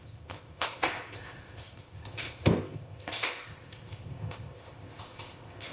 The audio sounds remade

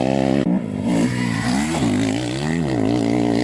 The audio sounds recorded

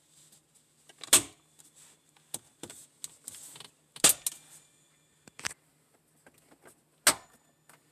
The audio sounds recorded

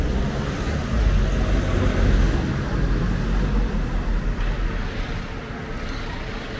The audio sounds recorded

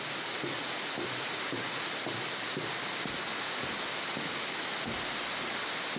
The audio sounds recorded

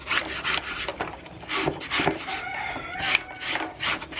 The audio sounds recorded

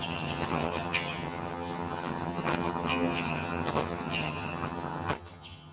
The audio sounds remade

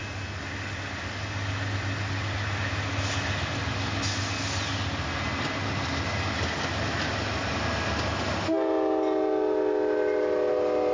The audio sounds recorded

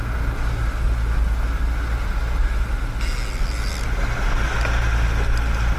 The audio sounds recorded